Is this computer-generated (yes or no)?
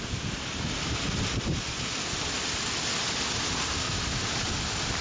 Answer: no